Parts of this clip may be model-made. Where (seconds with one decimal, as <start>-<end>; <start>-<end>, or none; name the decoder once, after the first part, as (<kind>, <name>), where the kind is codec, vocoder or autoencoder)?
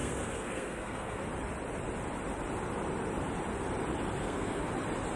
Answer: 0.0-1.2 (codec, SNAC); 4.2-4.7